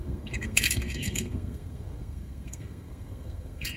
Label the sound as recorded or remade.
remade